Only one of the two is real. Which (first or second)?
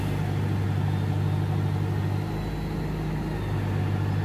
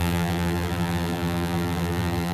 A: first